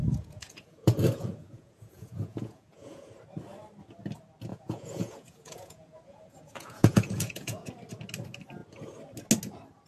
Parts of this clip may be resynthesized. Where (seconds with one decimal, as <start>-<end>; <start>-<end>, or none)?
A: 0.0-3.1; 4.5-7.7